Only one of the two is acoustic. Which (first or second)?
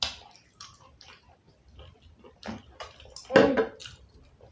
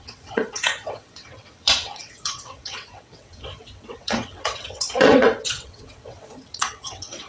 first